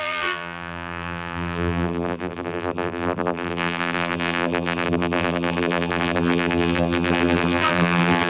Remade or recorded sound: remade